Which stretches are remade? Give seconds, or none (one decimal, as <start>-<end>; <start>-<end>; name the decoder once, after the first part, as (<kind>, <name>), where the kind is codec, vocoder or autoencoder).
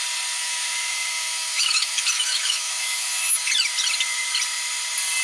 0.4-3.5 (autoencoder, DAC-VAE)